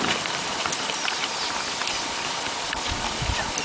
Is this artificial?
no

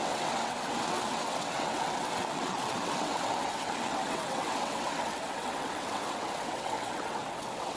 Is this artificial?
yes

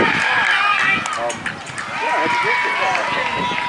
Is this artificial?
no